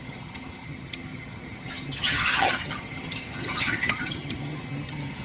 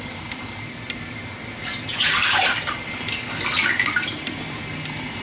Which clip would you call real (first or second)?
second